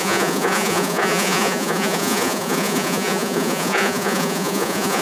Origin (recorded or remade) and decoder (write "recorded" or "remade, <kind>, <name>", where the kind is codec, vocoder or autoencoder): remade, vocoder, Vocos